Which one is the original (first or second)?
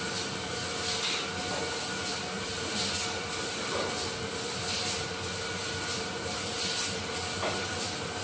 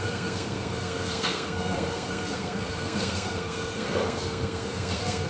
first